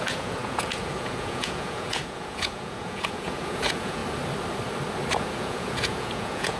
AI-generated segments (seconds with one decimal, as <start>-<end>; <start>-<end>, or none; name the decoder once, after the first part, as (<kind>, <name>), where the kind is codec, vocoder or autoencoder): 0.0-4.0 (vocoder, Vocos); 5.1-6.6